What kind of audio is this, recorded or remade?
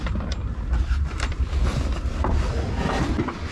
recorded